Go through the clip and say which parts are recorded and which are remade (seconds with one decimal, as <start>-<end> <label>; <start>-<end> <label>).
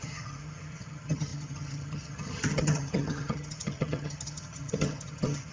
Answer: 0.0-5.5 remade